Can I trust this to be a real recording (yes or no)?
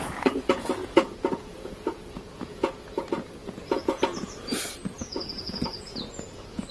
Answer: no